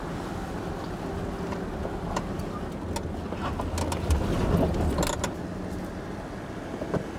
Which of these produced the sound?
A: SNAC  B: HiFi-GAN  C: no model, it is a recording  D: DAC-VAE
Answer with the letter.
C